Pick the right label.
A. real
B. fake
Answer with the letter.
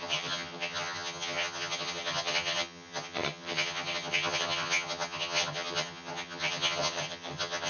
B